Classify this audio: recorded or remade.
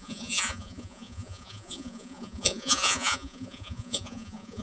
remade